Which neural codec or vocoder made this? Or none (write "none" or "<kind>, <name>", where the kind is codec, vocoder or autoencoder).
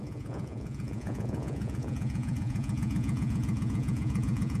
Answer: vocoder, Vocos